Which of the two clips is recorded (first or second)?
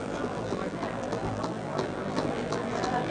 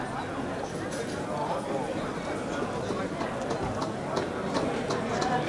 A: second